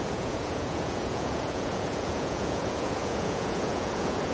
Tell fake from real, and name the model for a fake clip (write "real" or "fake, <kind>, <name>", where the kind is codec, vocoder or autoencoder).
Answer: fake, vocoder, Vocos